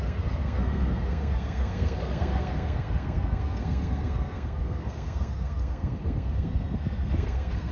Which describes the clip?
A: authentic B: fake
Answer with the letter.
B